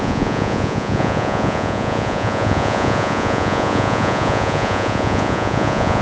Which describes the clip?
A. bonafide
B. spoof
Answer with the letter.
B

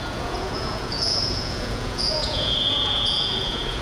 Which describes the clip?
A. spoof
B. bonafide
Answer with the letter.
A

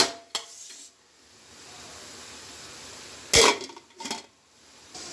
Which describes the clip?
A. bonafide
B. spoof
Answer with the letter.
A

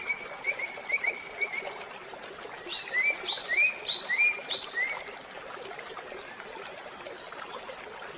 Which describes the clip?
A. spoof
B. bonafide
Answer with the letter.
B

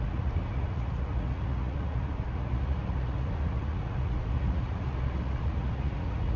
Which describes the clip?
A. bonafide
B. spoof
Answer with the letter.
B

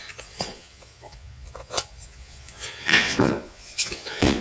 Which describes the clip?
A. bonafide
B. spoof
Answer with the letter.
B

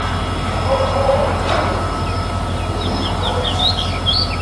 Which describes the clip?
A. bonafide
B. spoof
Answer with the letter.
A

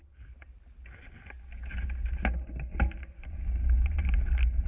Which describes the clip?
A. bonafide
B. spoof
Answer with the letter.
A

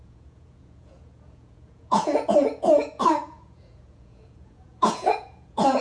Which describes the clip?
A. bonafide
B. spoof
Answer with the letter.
B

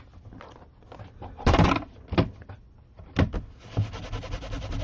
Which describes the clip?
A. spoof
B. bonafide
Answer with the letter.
B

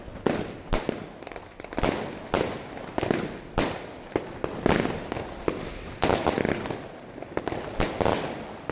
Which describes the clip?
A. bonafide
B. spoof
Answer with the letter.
A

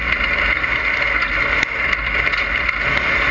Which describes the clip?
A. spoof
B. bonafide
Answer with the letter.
B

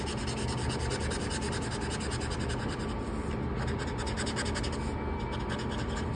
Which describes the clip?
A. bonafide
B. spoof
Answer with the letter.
A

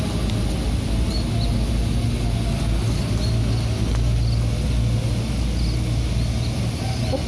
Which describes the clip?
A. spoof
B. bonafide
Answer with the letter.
B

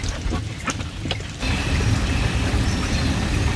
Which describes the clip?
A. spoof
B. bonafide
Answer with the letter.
B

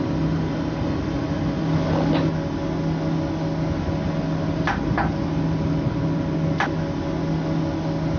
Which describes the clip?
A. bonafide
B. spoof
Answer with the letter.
A